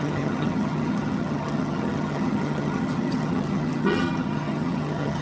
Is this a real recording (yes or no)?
no